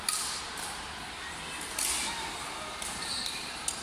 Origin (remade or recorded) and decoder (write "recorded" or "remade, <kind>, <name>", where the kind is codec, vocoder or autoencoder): recorded